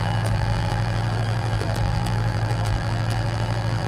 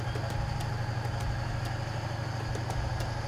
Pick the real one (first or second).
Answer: second